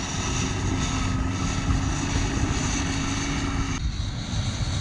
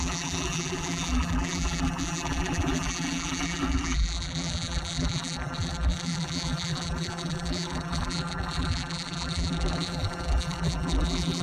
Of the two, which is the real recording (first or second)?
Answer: first